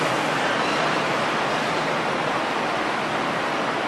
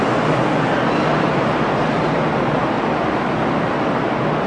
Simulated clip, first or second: first